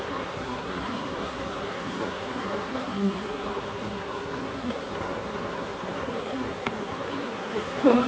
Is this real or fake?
fake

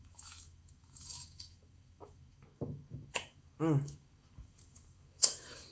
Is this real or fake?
fake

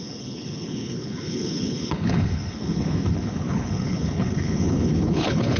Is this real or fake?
fake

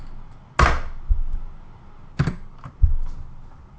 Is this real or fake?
real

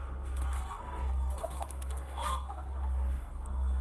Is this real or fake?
fake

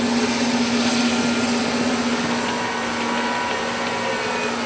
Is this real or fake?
real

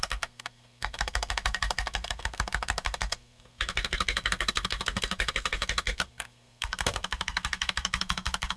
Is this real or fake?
fake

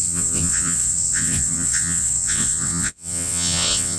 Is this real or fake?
fake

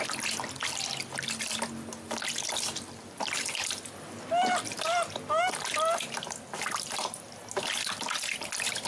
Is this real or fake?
real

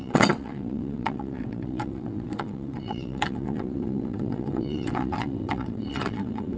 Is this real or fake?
fake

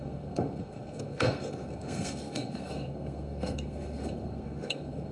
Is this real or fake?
fake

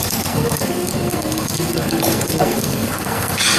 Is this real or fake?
fake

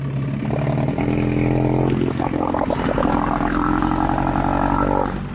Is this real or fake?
real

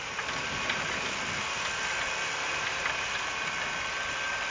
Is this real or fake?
real